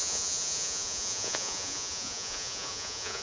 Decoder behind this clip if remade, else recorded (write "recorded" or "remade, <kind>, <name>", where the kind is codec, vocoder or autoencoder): remade, vocoder, Vocos